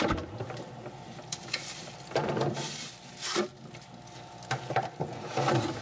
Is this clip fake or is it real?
real